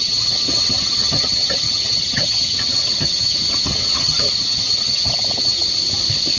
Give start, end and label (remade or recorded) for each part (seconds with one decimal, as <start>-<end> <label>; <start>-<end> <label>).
0.0-5.7 remade; 5.7-6.4 recorded